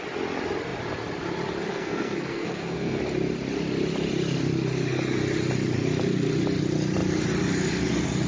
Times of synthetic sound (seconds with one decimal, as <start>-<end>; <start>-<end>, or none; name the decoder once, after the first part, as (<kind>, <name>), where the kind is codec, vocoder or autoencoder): 1.7-3.0 (codec, SNAC)